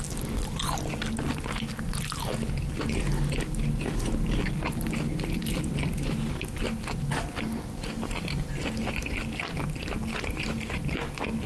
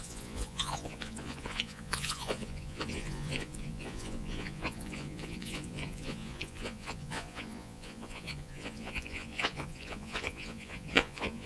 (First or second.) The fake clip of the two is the second